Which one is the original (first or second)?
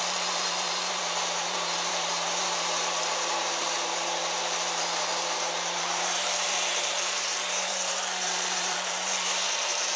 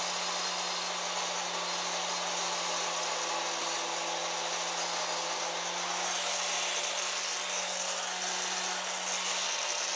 second